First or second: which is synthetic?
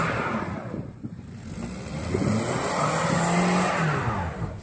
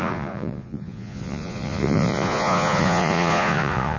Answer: second